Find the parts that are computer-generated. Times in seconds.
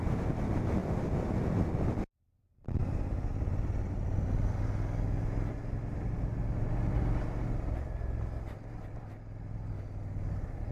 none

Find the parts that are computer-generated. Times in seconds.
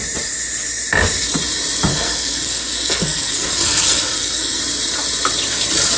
1.9-4.6 (codec, SNAC)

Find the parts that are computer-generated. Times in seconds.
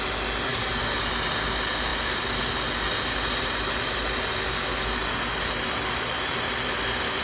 0.5-1.0 (codec, DAC)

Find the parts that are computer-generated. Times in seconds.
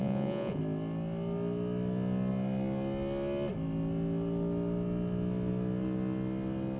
0.0-0.6 (vocoder, Vocos)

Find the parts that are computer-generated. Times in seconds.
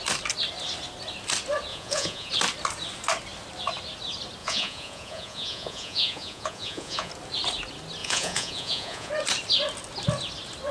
1.7-2.3 (vocoder, Vocos); 4.4-7.1; 8.0-9.1